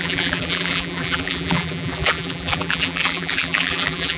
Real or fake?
fake